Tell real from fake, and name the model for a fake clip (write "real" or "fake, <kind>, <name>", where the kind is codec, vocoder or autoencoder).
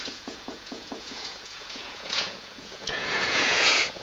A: fake, vocoder, Vocos